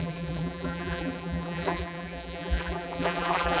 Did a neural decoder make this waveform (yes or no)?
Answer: yes